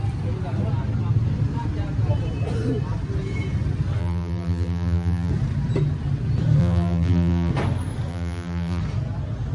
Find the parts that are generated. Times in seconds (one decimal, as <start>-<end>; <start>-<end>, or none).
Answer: 4.0-5.3; 6.6-7.5; 8.1-8.8